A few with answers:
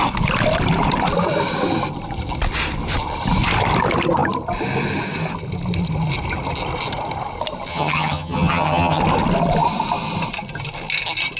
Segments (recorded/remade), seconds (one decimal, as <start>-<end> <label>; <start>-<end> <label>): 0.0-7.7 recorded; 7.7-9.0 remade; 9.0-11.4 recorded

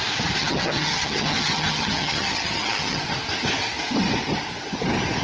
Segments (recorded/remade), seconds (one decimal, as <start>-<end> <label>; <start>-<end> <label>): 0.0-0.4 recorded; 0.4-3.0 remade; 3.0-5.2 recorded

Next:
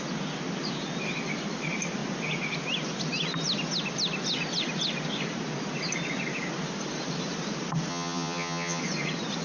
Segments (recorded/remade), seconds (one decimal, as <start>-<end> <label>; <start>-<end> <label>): 0.0-7.9 recorded; 7.9-8.8 remade; 8.8-9.4 recorded

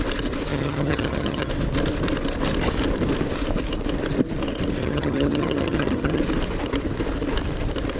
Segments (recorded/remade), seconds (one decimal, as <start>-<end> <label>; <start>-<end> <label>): 0.0-0.5 recorded; 0.5-1.5 remade; 1.5-4.8 recorded; 4.8-6.2 remade; 6.2-8.0 recorded